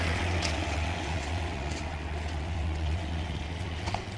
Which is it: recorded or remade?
remade